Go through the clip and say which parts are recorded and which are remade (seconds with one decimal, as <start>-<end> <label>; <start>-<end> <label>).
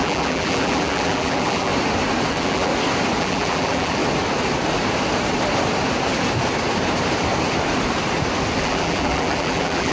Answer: 0.0-1.7 remade; 1.7-2.3 recorded; 2.3-2.7 remade; 2.7-3.2 recorded; 3.2-4.0 remade; 4.0-8.6 recorded; 8.6-9.9 remade